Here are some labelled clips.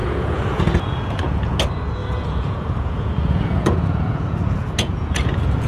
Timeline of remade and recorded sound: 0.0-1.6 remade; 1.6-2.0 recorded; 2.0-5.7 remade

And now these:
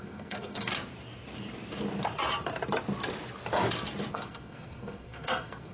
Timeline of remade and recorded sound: 0.0-0.7 remade; 0.7-4.1 recorded; 4.1-5.7 remade

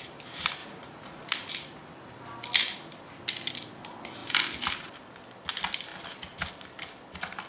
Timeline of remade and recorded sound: 0.0-0.6 recorded; 0.6-1.5 remade; 1.5-7.5 recorded

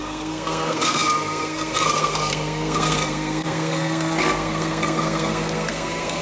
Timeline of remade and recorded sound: 0.0-6.2 remade

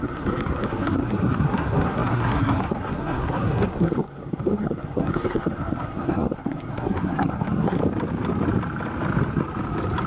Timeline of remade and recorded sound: 0.0-7.8 remade; 7.8-10.1 recorded

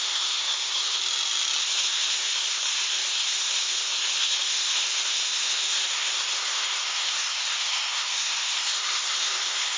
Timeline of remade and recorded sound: 0.0-1.0 remade; 1.0-1.6 recorded; 1.6-9.8 remade